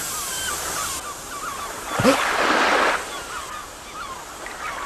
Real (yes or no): yes